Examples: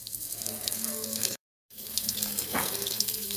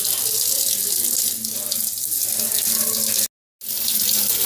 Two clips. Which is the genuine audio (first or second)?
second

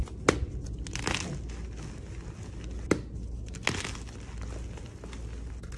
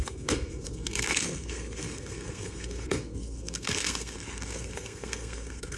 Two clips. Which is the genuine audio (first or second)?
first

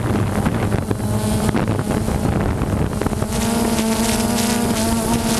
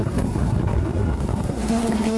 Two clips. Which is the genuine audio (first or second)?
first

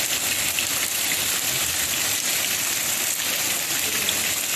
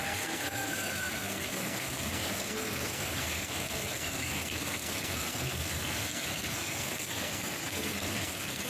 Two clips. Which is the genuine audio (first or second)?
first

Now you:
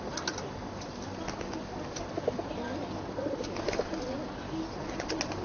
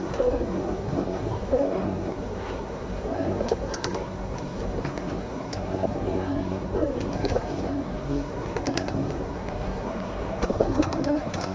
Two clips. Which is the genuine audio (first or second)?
first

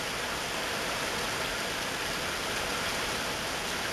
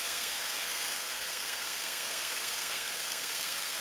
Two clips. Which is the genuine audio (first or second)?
first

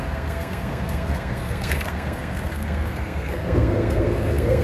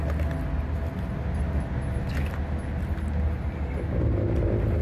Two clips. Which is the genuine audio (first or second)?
second